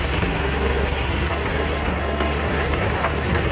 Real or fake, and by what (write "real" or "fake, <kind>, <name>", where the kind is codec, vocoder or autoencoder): fake, codec, SNAC